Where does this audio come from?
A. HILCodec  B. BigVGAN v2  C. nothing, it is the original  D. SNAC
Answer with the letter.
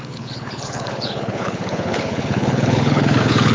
A